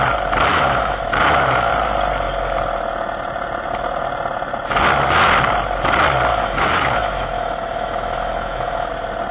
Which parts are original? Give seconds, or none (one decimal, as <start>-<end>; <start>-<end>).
0.0-0.5; 1.0-6.3; 8.9-9.3